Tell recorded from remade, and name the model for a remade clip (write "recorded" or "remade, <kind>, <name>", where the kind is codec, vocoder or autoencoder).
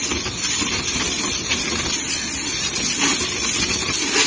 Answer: recorded